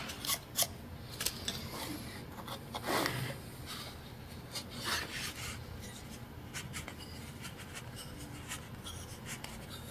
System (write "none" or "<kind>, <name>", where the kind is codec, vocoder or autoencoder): none